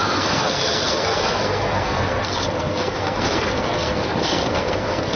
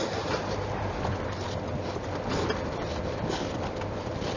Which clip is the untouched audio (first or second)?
second